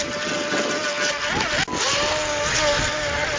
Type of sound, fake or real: real